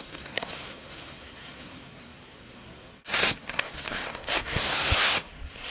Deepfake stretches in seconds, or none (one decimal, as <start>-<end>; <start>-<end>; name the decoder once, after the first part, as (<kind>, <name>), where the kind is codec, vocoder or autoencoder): 0.0-5.7 (codec, SNAC)